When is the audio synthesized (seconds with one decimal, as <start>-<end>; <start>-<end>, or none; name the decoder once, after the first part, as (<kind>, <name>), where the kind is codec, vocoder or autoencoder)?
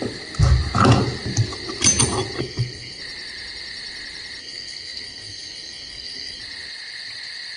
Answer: 2.4-3.0 (codec, SNAC); 4.4-6.4